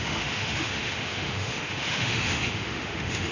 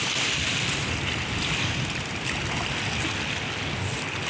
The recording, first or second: second